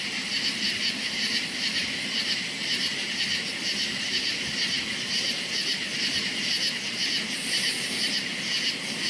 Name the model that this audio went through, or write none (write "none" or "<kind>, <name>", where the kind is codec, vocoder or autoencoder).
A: none